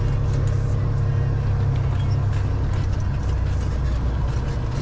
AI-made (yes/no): no